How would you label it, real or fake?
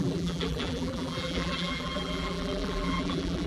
fake